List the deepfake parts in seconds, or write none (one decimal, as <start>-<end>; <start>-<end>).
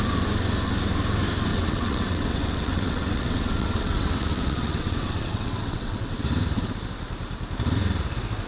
1.5-6.2